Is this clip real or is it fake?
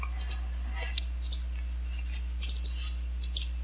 real